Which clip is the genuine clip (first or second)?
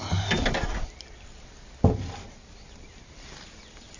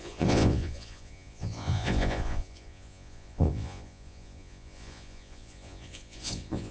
first